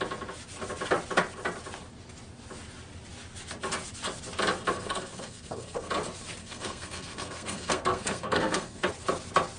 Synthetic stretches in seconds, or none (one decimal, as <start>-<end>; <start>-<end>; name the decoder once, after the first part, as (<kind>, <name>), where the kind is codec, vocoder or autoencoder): 4.7-5.9 (codec, SNAC); 6.4-8.9